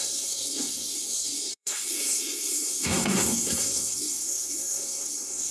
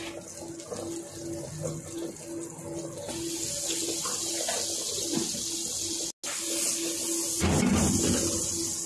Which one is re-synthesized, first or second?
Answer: first